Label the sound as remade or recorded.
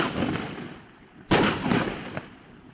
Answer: recorded